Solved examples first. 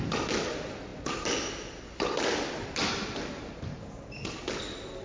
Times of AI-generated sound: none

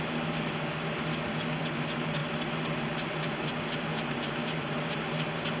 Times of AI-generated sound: none

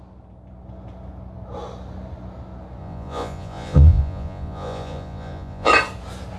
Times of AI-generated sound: 2.8-5.7 (vocoder, Vocos)

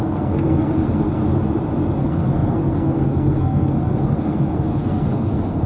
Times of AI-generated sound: 0.0-1.2 (codec, SNAC); 2.0-5.7

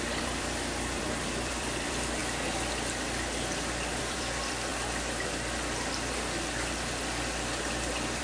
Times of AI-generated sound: 0.0-2.2 (vocoder, BigVGAN v2); 4.0-4.7

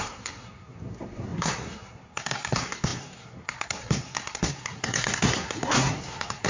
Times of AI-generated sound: 0.0-6.5 (codec, SNAC)

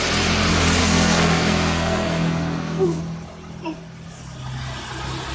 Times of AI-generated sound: 0.8-3.0 (codec, SNAC)